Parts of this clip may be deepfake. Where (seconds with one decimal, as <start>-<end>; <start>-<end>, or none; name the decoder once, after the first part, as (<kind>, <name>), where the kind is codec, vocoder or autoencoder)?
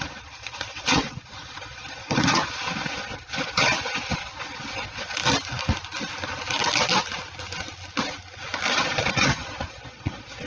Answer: 0.0-5.2 (vocoder, Vocos); 8.7-10.5